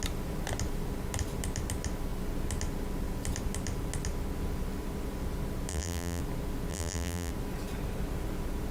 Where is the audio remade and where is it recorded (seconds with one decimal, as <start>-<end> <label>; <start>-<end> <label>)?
0.0-5.7 recorded; 5.7-6.2 remade; 6.2-6.7 recorded; 6.7-7.3 remade; 7.3-8.7 recorded